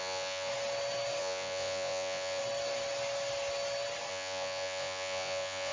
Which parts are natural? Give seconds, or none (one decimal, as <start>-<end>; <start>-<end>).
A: 0.5-1.2; 2.4-4.1